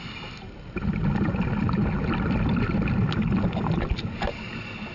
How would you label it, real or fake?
real